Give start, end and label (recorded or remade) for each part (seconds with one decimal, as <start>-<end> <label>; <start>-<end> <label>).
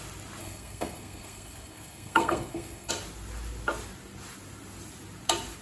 0.0-0.4 recorded; 0.4-2.9 remade; 2.9-5.6 recorded